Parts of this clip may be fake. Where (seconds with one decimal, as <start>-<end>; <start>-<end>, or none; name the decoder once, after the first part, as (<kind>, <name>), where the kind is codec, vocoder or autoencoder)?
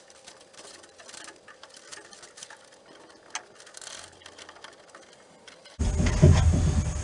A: none